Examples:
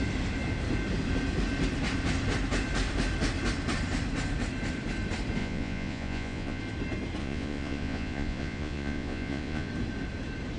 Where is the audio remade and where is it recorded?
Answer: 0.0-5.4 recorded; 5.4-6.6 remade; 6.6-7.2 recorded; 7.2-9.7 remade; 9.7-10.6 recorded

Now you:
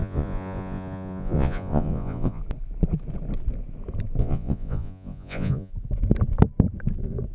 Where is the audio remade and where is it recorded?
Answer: 0.0-2.4 remade; 2.4-4.2 recorded; 4.2-5.7 remade; 5.7-7.3 recorded

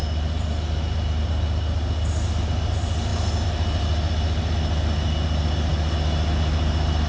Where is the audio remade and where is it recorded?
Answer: 0.0-7.1 recorded

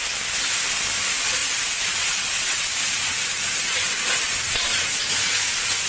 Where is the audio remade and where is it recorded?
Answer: 0.0-1.4 recorded; 1.4-4.9 remade; 4.9-5.9 recorded